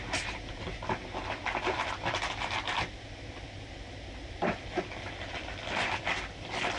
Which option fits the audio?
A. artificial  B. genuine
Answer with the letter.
B